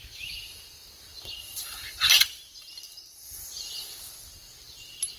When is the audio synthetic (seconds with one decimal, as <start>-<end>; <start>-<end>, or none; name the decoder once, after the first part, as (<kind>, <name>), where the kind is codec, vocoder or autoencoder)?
none